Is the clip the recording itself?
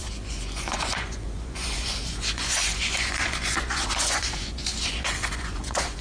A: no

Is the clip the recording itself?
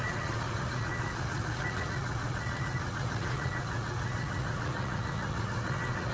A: no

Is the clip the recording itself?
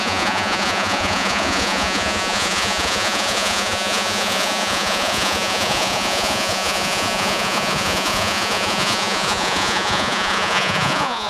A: no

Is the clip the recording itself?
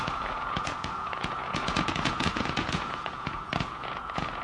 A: no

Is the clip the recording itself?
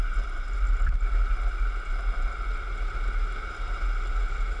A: yes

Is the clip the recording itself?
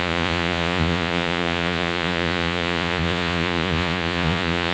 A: no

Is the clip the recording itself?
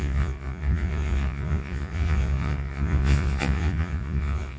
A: no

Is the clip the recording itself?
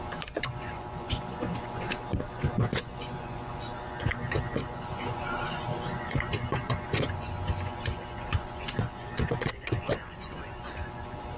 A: no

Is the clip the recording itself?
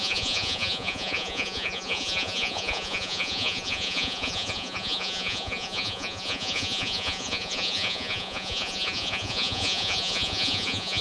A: no